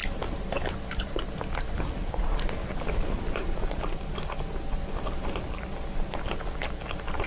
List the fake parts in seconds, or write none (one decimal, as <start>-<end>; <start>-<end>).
none